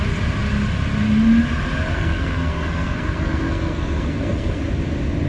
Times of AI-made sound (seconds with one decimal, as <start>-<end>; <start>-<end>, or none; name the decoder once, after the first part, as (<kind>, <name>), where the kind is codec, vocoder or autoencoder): 1.9-4.6 (codec, SNAC)